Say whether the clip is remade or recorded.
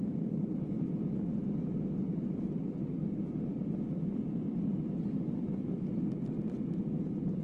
recorded